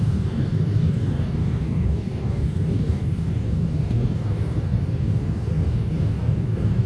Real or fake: fake